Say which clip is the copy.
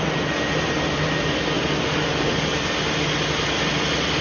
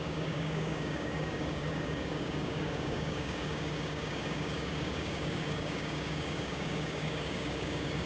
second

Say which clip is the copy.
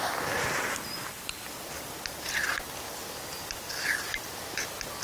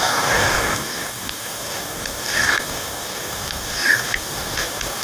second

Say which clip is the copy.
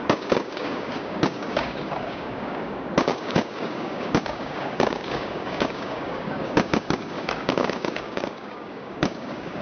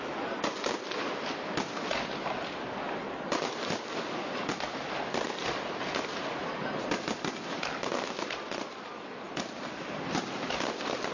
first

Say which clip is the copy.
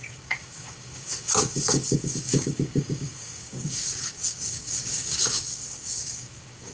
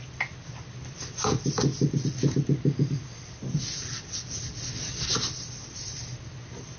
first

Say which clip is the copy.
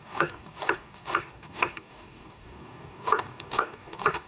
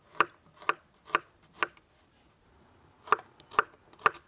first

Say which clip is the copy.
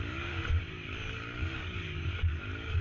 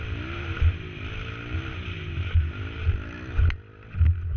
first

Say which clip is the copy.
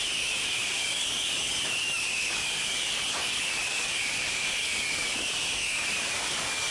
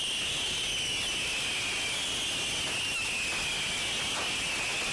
first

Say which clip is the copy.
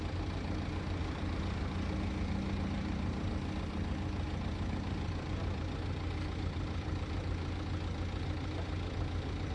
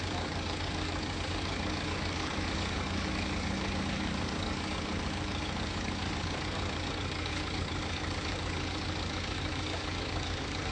second